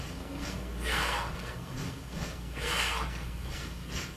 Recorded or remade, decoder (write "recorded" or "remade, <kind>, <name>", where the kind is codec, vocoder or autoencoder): remade, codec, SNAC